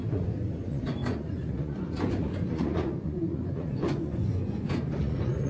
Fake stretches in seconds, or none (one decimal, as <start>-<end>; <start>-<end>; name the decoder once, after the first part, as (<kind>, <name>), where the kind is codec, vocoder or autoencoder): 0.0-5.5 (vocoder, Vocos)